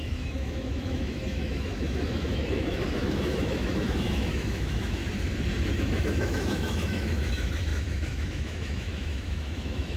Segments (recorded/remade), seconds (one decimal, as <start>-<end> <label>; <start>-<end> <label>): 0.0-5.0 remade; 5.0-5.7 recorded; 5.7-10.0 remade